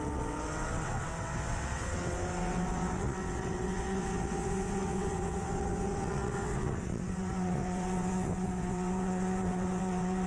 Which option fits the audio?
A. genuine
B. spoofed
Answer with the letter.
B